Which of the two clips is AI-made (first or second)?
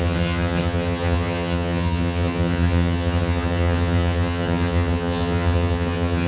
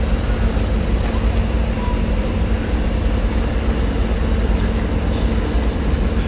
first